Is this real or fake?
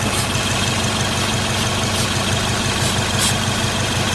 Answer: real